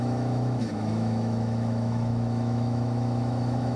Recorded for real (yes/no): no